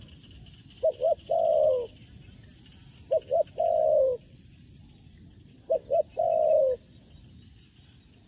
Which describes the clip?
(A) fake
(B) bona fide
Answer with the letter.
B